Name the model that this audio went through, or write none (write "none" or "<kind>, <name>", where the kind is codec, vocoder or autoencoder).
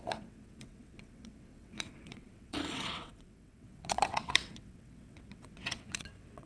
vocoder, WaveNeXt